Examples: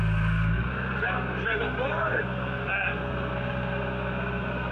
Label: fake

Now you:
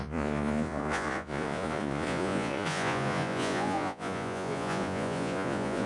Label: fake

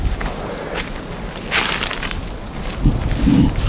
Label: real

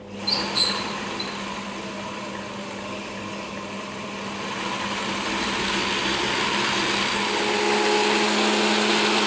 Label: real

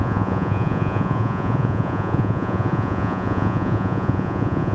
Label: fake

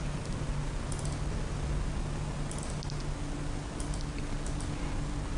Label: real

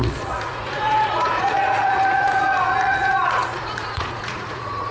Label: fake